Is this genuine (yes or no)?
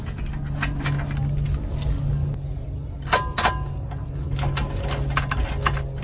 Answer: yes